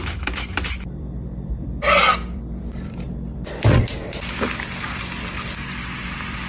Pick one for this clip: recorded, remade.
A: remade